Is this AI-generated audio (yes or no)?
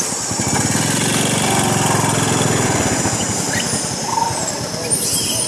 no